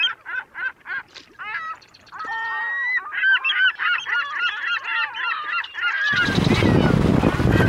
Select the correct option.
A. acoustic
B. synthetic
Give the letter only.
A